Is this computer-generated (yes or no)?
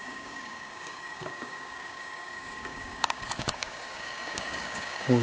yes